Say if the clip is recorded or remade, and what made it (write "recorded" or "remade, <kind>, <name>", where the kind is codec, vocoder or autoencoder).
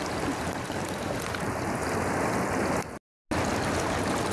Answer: recorded